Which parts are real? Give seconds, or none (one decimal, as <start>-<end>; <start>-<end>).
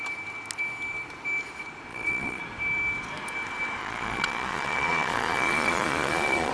0.0-1.9; 2.4-3.8